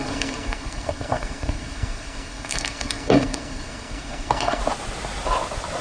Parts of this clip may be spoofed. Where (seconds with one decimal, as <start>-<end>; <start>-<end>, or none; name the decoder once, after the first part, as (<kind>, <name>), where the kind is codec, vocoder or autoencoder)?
0.0-4.6 (codec, SNAC)